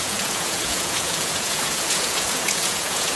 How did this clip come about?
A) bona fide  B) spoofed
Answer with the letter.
B